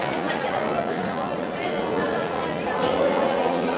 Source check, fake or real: fake